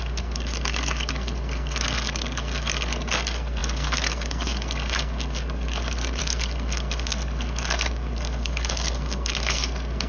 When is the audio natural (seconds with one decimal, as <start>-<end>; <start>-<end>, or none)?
none